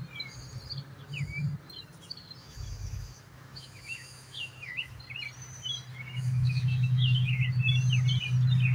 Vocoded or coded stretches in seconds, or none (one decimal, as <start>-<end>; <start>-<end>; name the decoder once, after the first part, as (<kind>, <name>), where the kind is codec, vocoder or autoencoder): 2.4-5.0 (autoencoder, DAC-VAE); 5.9-7.4